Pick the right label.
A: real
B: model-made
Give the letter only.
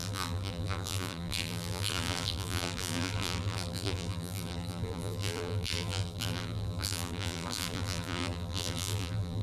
B